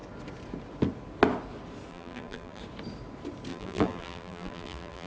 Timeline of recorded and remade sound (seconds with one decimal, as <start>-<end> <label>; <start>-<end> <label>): 0.0-1.9 recorded; 1.9-2.6 remade; 2.6-3.5 recorded; 3.5-5.1 remade